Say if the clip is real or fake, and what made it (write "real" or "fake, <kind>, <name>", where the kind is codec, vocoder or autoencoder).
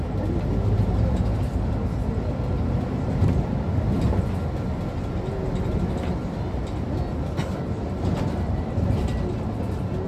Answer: real